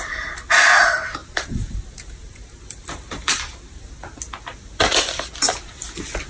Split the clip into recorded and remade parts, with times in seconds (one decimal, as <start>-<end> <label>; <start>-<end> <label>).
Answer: 0.0-1.2 recorded; 1.2-3.9 remade; 3.9-6.3 recorded

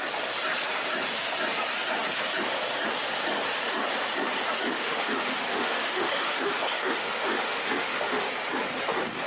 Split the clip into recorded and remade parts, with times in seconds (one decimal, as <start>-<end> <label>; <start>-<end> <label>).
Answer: 0.0-4.7 recorded; 4.7-8.3 remade; 8.3-9.3 recorded